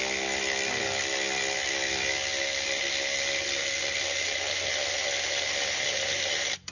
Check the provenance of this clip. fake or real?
real